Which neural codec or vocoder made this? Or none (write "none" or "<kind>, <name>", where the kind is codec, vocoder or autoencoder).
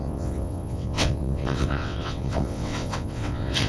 vocoder, WaveNeXt